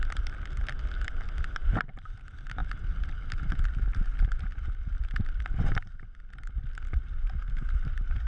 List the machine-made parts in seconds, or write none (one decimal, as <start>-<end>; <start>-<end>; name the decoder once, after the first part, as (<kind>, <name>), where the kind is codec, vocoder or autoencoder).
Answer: none